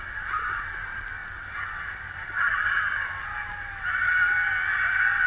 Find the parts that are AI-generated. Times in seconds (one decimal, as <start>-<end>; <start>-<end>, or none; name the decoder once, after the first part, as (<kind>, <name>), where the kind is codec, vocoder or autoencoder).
none